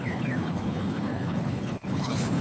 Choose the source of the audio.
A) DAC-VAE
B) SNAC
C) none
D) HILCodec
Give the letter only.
D